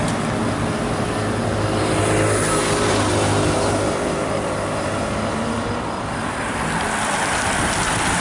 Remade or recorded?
recorded